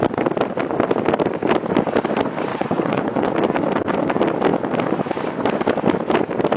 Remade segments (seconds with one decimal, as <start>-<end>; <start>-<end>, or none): 2.5-3.3